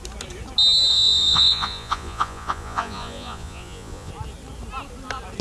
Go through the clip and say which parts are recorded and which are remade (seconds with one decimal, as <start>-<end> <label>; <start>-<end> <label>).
0.0-0.9 recorded; 0.9-4.1 remade; 4.1-5.4 recorded